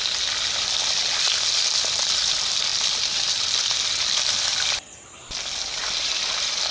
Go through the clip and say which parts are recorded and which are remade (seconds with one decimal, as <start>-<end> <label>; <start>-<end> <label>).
0.0-6.7 recorded